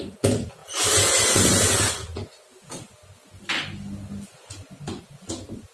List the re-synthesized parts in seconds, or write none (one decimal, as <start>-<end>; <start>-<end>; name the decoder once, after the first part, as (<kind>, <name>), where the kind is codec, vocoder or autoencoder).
0.6-1.5 (vocoder, Vocos)